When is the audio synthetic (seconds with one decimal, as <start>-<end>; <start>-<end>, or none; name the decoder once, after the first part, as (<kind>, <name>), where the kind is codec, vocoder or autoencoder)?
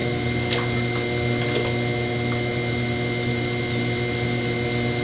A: none